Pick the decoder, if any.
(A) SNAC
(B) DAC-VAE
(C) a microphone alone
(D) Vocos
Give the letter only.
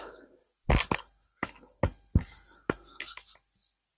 C